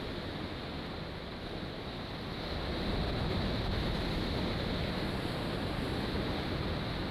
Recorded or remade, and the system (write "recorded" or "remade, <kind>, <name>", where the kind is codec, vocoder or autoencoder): recorded